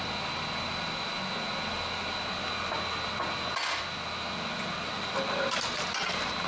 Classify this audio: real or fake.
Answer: real